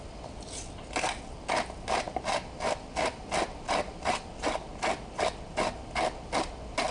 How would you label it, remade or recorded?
recorded